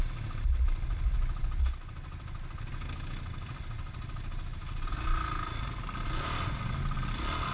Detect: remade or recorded recorded